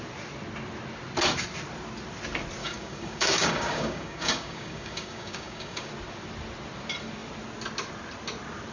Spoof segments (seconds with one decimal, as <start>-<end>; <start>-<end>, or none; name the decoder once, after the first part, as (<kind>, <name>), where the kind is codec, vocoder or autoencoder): 2.6-5.9 (codec, DAC)